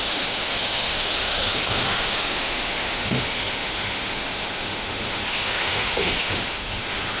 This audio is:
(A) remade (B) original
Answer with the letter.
A